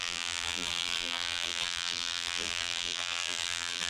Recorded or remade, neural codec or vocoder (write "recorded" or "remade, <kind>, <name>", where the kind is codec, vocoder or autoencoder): remade, vocoder, BigVGAN v2